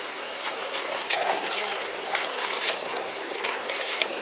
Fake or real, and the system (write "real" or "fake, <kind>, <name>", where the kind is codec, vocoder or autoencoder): fake, codec, SNAC